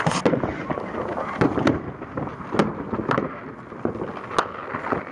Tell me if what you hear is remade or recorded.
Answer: recorded